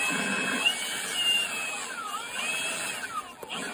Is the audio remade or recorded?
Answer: remade